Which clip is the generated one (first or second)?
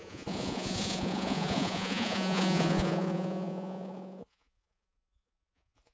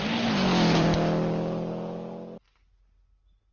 first